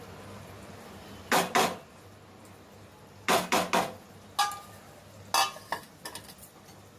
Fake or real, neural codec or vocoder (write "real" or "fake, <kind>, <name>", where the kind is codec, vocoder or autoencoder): real